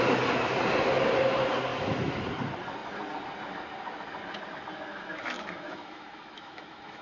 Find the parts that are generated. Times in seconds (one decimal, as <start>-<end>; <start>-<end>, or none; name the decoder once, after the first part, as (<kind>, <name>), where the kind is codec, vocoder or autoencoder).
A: 1.7-2.2 (autoencoder, DAC-VAE); 4.9-7.0